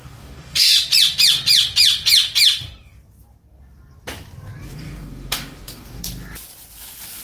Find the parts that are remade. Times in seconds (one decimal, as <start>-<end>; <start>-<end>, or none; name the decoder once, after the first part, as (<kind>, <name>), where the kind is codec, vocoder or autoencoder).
0.0-0.7 (codec, DAC); 4.7-6.0

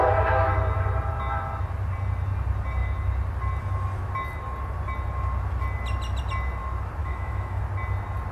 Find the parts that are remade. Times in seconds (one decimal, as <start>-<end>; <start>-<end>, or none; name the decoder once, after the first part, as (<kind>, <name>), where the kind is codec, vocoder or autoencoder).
7.0-7.6 (autoencoder, DAC-VAE)

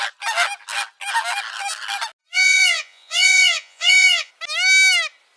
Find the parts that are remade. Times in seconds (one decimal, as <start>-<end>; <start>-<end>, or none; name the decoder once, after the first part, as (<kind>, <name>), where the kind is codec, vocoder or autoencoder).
2.2-4.3 (vocoder, Vocos)

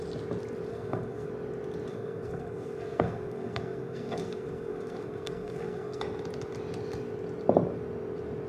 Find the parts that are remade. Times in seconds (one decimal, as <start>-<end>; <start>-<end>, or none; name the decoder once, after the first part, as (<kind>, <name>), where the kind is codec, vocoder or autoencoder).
0.7-1.3 (codec, SNAC); 1.9-6.0

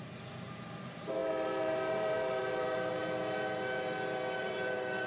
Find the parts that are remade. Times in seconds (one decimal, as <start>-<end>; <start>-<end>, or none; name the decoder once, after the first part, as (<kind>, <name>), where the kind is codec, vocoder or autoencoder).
0.0-3.0 (vocoder, BigVGAN v2); 4.4-5.1

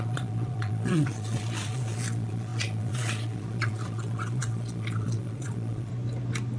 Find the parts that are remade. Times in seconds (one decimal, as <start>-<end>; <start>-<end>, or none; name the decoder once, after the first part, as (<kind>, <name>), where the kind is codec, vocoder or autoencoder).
0.0-5.9 (vocoder, Vocos)

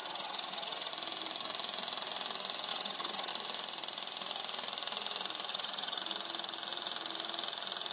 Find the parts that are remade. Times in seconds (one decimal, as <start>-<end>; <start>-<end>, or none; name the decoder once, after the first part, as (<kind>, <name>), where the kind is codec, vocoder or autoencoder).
0.0-0.9 (vocoder, HiFi-GAN); 2.7-3.3; 5.5-6.0

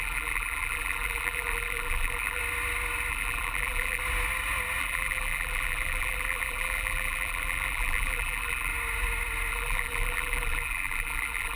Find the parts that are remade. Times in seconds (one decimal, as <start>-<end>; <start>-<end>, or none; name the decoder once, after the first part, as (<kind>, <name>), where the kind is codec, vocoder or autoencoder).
0.0-2.4 (vocoder, BigVGAN v2); 3.1-4.0; 4.8-8.7; 9.5-11.6